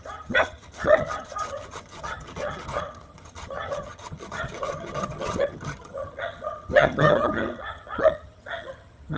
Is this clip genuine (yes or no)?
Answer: no